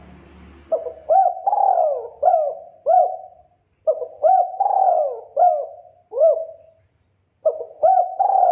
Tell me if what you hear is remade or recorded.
recorded